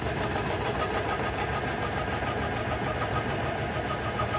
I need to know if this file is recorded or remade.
recorded